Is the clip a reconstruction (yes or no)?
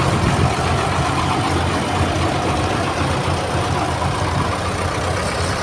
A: no